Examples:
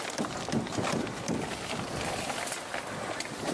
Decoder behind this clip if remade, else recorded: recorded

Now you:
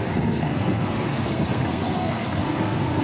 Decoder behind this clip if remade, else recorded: remade, codec, SNAC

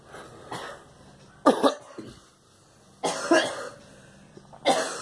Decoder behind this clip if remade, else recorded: recorded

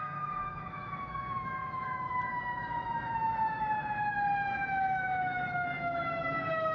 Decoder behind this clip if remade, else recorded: remade, autoencoder, DAC-VAE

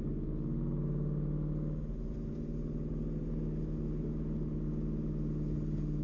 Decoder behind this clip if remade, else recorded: recorded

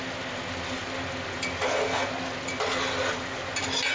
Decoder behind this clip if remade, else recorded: recorded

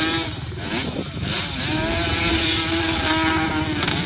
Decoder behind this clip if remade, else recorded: recorded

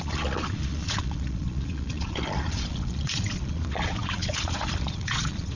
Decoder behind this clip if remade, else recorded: remade, vocoder, Vocos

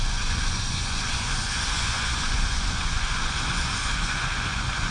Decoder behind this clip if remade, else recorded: remade, vocoder, Vocos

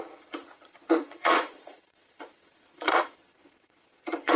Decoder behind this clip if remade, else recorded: remade, vocoder, Vocos